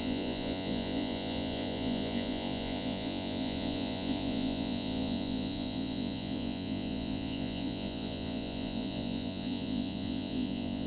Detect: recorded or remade remade